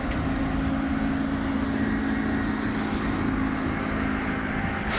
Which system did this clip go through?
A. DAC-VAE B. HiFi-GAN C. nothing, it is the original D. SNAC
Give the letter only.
C